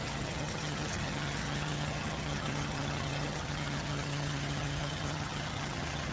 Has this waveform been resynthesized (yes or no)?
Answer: yes